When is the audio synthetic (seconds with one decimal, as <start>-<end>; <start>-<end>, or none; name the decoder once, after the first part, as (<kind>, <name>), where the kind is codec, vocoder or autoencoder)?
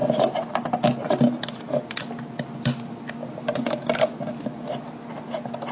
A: none